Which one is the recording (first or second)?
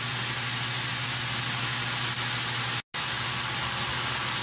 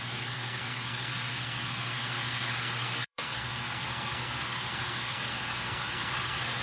first